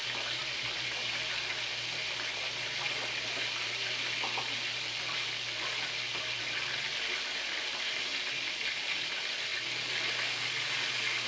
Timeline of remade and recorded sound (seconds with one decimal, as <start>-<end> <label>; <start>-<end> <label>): 0.0-11.3 recorded